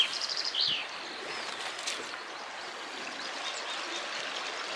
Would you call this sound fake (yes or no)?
no